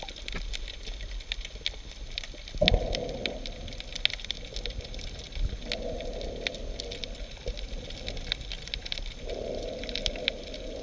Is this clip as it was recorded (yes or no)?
yes